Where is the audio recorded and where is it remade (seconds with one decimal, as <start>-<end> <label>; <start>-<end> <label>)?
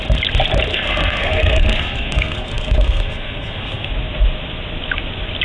0.0-0.7 recorded; 0.7-3.9 remade; 3.9-5.4 recorded